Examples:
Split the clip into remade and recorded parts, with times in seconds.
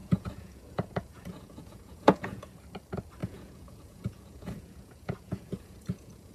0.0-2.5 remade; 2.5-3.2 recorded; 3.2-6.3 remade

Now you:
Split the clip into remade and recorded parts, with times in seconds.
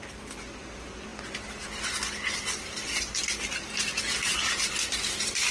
0.0-5.5 recorded